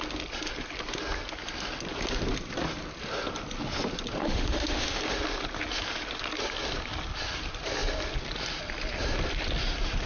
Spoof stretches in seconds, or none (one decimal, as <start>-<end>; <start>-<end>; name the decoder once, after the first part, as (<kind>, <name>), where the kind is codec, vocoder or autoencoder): 4.2-5.0 (autoencoder, DAC-VAE)